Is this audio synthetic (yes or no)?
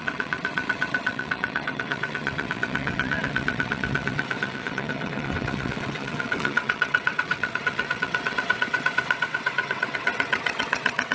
yes